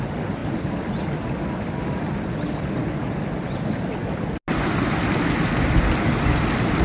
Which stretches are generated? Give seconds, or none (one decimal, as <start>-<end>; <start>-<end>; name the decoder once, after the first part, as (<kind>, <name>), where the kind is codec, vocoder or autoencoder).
none